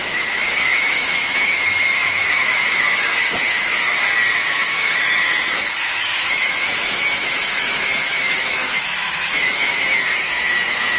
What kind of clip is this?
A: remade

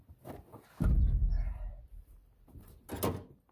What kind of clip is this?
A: recorded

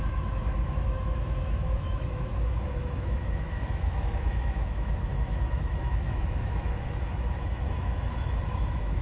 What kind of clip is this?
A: remade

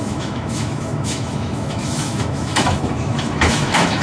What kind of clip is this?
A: remade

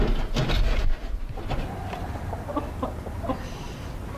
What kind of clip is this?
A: recorded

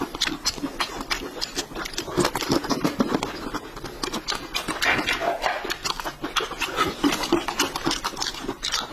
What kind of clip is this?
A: recorded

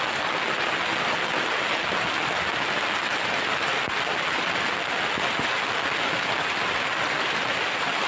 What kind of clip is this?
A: recorded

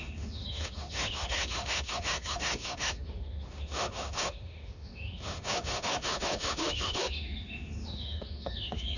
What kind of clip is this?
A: remade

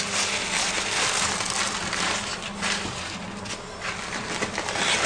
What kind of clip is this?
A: recorded